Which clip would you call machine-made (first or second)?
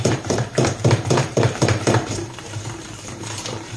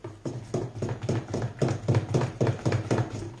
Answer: first